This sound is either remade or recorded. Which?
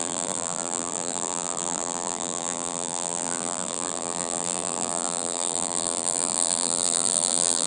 remade